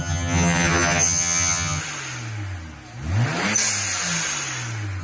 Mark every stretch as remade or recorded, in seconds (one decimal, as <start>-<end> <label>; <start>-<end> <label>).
0.0-1.8 remade; 1.8-5.0 recorded